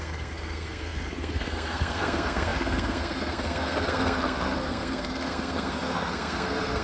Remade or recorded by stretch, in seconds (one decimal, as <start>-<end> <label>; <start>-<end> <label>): 0.0-6.8 remade